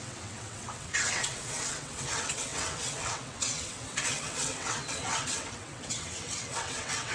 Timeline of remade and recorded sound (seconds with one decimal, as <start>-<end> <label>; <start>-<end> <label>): 0.0-7.1 remade